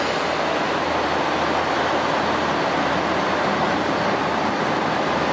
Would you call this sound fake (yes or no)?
no